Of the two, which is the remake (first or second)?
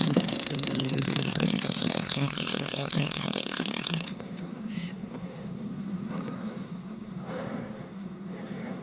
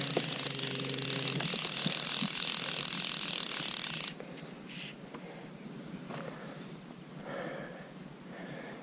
first